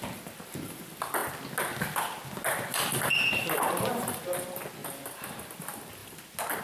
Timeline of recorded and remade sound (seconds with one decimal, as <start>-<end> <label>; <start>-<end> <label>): 0.0-2.9 recorded; 2.9-4.2 remade; 4.2-4.8 recorded; 4.8-5.4 remade; 5.4-6.6 recorded